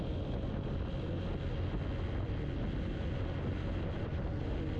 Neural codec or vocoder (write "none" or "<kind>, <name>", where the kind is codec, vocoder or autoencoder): none